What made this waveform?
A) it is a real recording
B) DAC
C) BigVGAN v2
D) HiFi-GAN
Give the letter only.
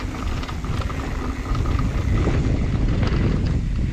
A